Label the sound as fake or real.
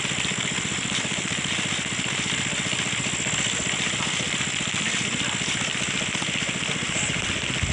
fake